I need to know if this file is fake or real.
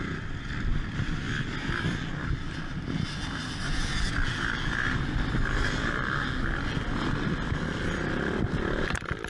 real